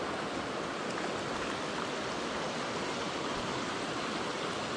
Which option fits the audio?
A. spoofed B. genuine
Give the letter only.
B